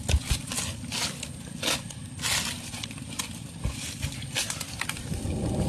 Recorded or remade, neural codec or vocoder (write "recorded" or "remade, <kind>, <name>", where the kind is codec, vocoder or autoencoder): recorded